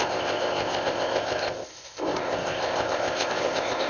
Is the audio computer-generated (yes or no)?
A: yes